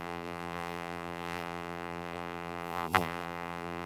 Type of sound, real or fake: fake